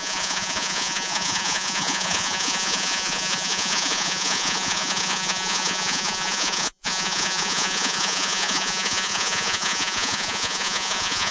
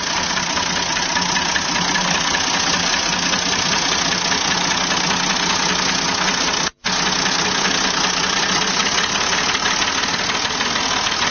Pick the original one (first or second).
second